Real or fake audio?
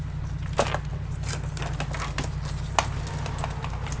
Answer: real